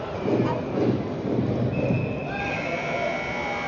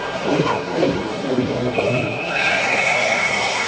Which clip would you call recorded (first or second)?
first